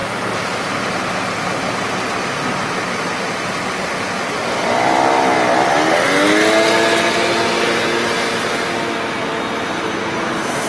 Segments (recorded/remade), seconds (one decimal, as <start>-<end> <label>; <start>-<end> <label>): 0.0-10.7 recorded